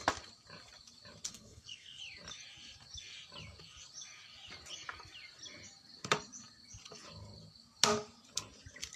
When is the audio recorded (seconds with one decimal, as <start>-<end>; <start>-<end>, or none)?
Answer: 0.0-1.3; 2.0-9.0